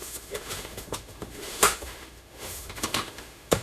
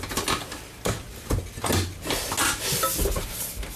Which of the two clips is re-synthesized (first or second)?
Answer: first